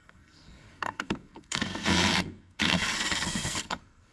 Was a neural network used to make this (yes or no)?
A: yes